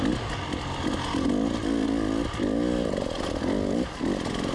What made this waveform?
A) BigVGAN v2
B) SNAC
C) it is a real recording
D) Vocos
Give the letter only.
C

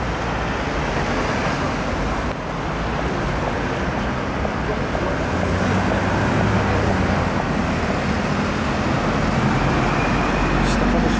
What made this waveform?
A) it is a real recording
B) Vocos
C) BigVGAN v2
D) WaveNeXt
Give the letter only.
A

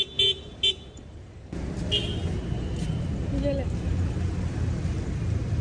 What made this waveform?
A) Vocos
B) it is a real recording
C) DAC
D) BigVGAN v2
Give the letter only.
B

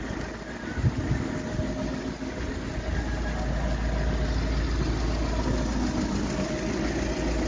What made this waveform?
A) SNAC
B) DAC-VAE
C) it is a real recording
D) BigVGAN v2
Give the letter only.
C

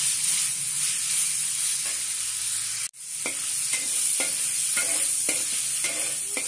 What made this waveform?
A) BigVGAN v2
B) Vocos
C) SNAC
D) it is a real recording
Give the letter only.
D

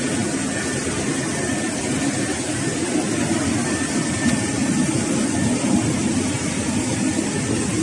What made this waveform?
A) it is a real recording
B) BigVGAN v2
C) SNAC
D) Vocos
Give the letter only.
A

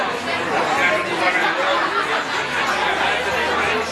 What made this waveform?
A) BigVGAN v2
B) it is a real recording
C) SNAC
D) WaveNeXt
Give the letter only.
B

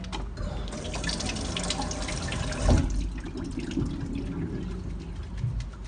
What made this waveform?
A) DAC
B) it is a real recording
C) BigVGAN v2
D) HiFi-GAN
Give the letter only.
B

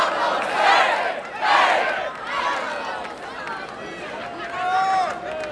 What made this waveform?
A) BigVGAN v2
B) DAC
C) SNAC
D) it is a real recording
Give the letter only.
D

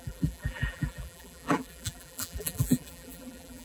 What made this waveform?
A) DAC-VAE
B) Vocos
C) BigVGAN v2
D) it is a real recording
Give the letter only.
C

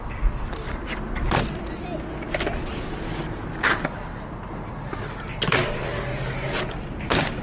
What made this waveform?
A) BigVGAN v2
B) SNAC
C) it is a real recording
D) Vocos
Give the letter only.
C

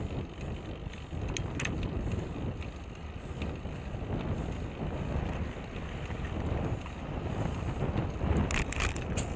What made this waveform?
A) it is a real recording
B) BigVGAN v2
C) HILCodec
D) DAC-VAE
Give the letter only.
A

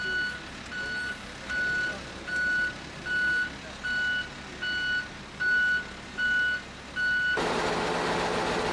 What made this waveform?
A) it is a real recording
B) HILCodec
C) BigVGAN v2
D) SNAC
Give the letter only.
A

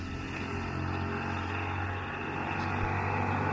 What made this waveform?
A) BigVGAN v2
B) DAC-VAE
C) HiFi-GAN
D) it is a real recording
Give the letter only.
D